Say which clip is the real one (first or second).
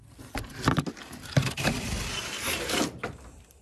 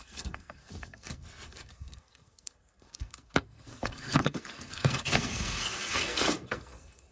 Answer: first